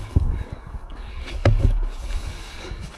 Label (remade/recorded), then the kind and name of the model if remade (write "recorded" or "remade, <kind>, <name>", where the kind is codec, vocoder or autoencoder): remade, codec, DAC